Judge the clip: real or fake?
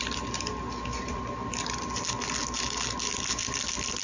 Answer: real